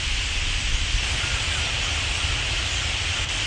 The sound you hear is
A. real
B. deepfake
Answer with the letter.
A